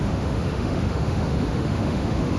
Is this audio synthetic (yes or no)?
yes